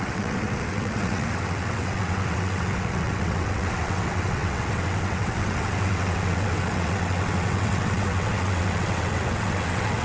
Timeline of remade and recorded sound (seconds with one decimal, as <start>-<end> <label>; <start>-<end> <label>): 0.0-10.0 remade